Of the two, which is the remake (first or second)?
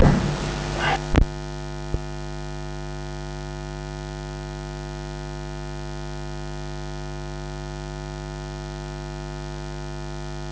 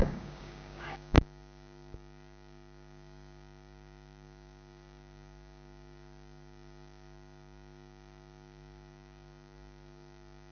second